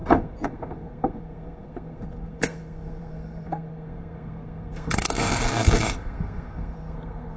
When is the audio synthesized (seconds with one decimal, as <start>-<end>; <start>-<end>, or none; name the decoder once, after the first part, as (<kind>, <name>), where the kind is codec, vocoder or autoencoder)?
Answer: 0.0-7.4 (codec, SNAC)